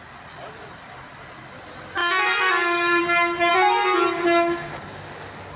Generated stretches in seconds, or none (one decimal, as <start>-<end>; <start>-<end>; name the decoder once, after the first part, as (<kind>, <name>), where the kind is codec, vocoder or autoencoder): none